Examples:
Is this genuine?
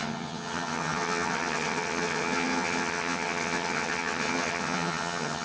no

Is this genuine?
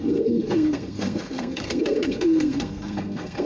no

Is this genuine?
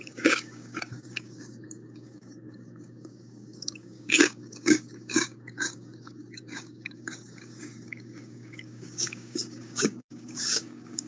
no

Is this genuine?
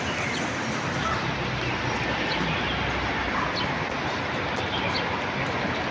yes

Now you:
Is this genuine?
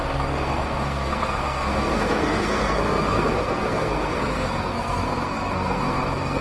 no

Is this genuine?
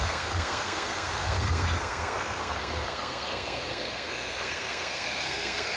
no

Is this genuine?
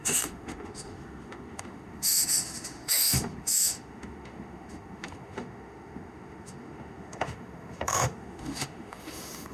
no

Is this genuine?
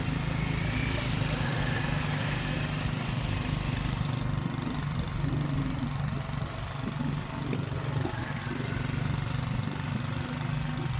yes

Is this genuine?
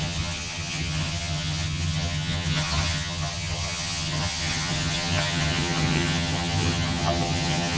no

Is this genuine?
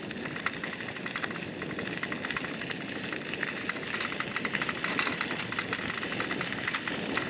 yes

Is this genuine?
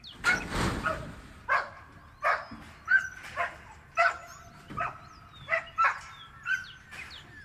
yes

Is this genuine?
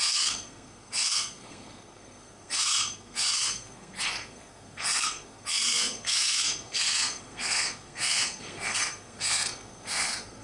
no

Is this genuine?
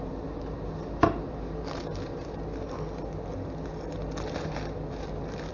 yes